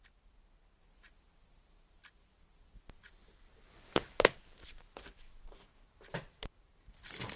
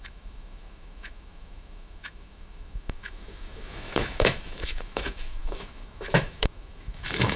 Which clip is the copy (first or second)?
second